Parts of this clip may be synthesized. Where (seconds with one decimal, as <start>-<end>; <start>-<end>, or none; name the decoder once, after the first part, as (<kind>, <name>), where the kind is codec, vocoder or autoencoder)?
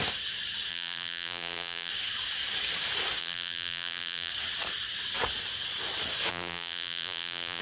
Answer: 0.7-1.9 (vocoder, BigVGAN v2); 3.2-4.3; 6.3-7.6